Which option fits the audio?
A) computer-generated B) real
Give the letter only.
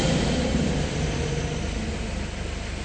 B